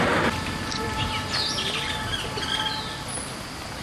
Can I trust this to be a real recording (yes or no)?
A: yes